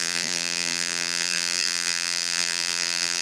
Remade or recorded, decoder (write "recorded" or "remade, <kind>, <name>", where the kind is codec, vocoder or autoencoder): remade, vocoder, BigVGAN v2